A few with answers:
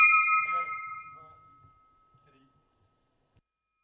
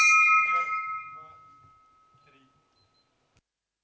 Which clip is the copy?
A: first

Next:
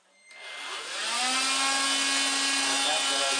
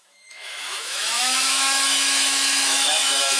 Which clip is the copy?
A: second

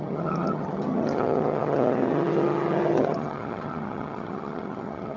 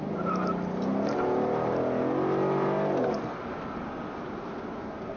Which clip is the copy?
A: first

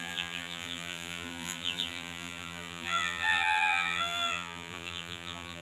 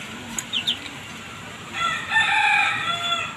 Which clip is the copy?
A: first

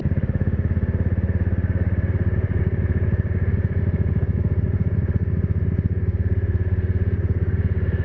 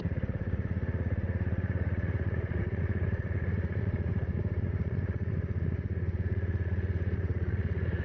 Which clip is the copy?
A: second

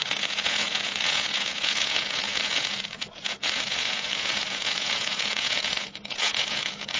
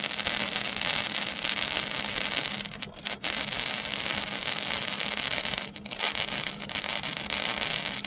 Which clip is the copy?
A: first